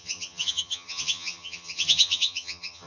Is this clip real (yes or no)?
no